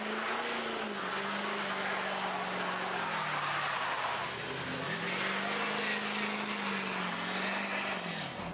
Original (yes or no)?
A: yes